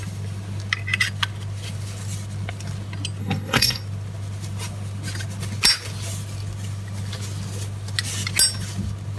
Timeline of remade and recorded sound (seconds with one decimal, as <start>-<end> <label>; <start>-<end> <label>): 0.0-3.2 recorded; 3.2-3.8 remade; 3.8-9.2 recorded